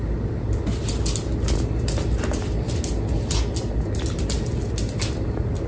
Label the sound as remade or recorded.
recorded